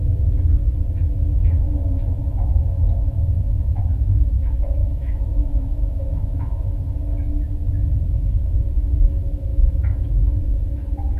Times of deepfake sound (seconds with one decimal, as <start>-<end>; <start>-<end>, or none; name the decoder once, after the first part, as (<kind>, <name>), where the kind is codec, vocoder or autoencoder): 2.2-4.3 (autoencoder, DAC-VAE); 4.8-6.7; 9.5-10.1